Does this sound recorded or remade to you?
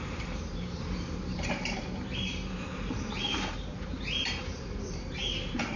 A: remade